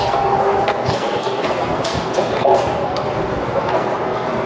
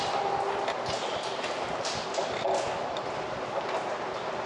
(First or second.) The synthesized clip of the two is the first